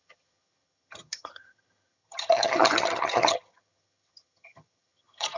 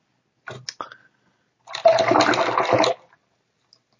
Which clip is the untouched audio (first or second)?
second